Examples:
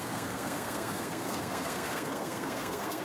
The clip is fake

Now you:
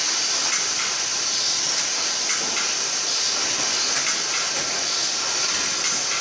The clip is real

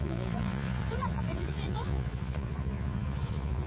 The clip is fake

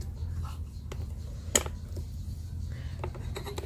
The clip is real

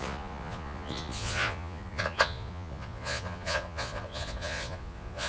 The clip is fake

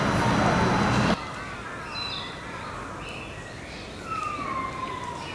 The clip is real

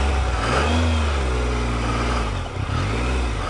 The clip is real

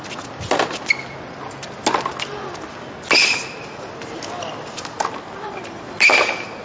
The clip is real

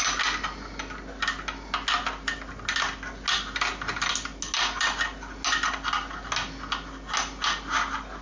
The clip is real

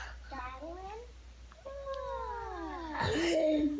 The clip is real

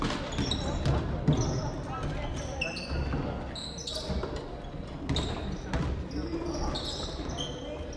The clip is real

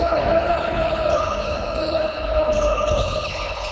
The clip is fake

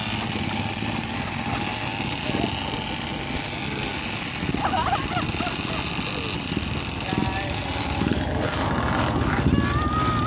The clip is real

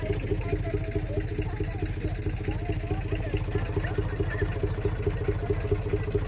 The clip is real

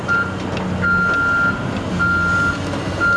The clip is real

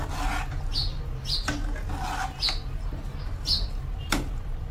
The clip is real